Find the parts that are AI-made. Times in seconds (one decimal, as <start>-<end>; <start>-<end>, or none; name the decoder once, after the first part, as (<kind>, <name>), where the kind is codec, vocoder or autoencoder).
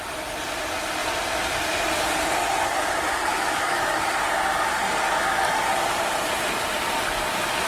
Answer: 3.3-4.1 (autoencoder, DAC-VAE)